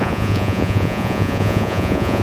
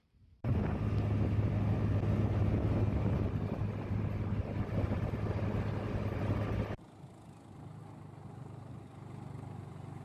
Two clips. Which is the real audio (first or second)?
second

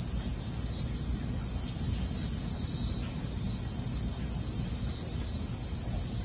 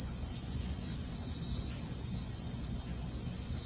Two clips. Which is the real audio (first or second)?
first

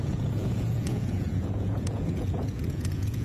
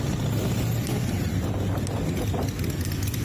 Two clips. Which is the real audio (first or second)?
second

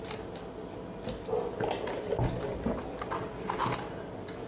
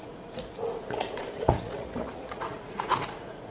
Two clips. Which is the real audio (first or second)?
first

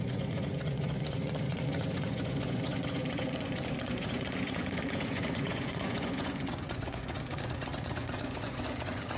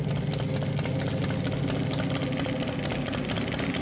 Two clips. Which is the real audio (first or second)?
second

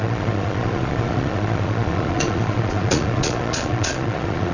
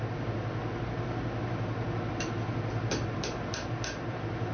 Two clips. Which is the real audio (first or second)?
second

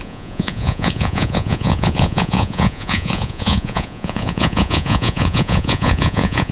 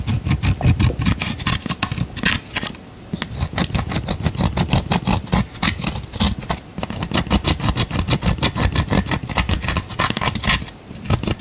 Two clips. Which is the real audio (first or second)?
second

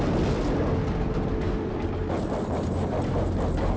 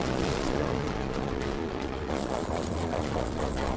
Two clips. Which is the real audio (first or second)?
first